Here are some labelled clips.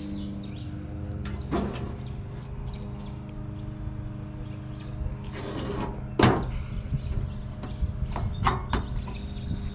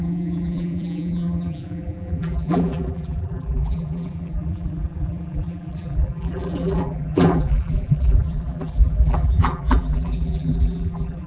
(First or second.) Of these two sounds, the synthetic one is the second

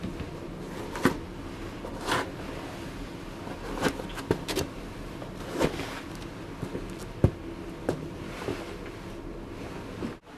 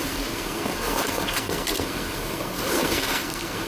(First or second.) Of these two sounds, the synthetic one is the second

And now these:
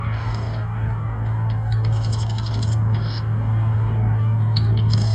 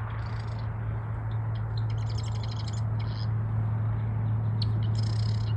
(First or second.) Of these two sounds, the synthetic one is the first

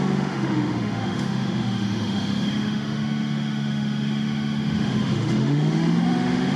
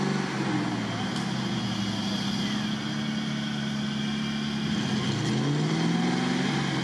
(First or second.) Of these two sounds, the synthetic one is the first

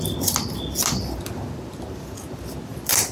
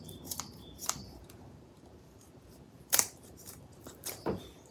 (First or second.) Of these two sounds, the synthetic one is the second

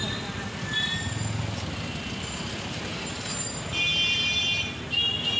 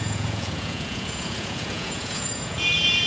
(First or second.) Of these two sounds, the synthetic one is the second